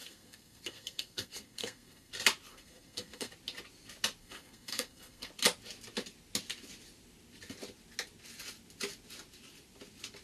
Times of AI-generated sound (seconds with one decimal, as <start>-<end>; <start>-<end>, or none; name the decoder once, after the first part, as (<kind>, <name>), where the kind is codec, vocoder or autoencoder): 0.0-2.1 (codec, SNAC); 2.5-3.3; 4.2-5.3